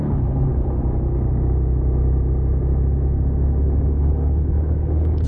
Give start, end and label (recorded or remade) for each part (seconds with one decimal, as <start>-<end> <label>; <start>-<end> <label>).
0.0-0.8 remade; 0.8-4.0 recorded; 4.0-5.3 remade